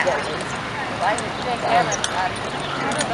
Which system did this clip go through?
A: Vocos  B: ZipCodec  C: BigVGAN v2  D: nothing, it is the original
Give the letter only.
D